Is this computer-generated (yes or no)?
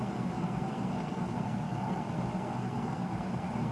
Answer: yes